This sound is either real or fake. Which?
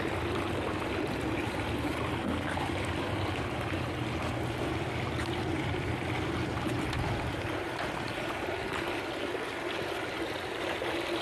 real